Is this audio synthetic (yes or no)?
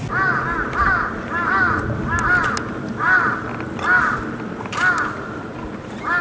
no